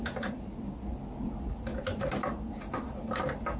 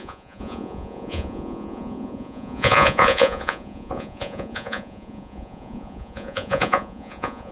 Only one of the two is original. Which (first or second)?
first